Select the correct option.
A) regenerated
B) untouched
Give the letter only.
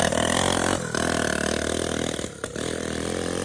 B